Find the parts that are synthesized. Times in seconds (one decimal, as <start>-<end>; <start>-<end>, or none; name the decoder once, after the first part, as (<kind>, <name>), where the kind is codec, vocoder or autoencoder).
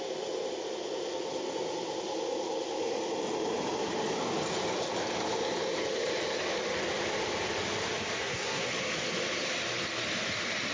8.2-8.7 (codec, SNAC)